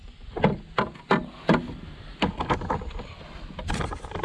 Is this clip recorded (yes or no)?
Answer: yes